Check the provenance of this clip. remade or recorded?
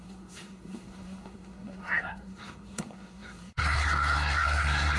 remade